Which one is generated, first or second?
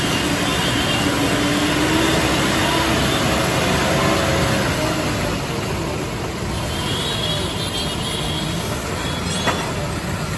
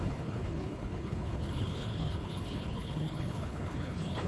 second